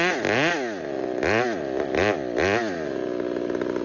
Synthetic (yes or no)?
no